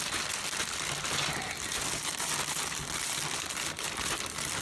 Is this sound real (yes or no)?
yes